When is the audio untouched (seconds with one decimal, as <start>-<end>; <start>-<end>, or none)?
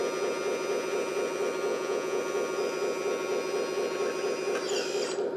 0.0-1.7; 2.2-5.4